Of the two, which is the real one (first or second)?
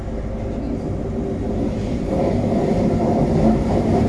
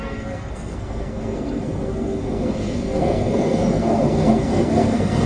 first